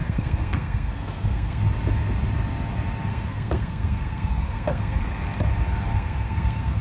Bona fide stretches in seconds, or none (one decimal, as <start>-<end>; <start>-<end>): 1.6-3.1; 5.0-5.9